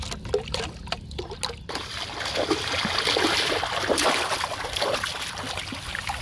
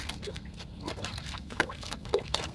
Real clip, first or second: first